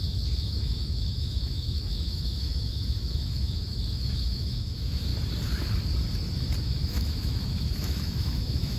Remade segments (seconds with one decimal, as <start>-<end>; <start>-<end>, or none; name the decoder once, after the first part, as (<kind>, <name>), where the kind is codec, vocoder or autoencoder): 0.0-5.1 (autoencoder, DAC-VAE); 6.6-8.8